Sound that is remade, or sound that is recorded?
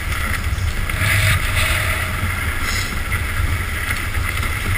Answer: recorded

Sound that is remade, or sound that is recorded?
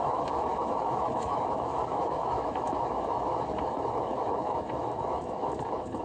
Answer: remade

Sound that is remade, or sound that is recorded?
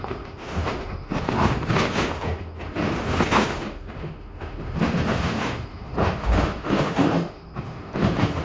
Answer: remade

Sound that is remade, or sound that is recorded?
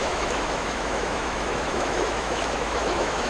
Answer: remade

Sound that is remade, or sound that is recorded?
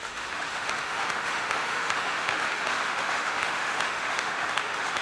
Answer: remade